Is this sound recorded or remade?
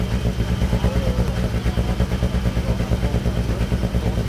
recorded